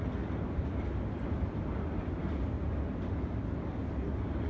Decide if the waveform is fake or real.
real